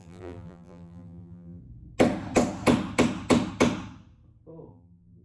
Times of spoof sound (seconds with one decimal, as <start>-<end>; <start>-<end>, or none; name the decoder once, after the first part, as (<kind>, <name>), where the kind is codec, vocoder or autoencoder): 0.0-1.6 (vocoder, BigVGAN v2); 4.7-5.2